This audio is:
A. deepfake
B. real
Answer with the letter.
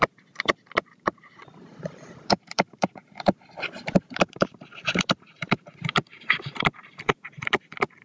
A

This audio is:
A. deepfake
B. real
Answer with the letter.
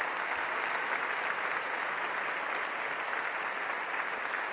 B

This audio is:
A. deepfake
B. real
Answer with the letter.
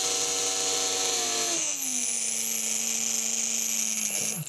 B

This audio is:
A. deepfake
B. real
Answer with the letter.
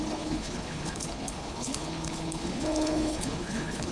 A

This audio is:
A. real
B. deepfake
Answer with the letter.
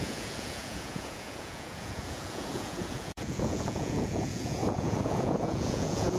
B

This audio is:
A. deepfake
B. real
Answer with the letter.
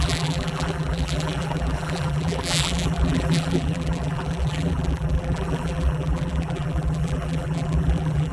A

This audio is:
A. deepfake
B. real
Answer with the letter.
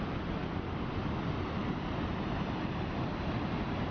B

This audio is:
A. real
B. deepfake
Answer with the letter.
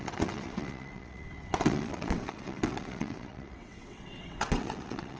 B